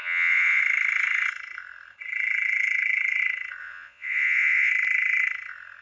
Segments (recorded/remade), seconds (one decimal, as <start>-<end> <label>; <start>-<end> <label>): 0.0-0.6 remade; 0.6-3.6 recorded; 3.6-4.7 remade; 4.7-5.8 recorded